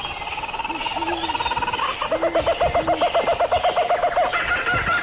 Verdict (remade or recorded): recorded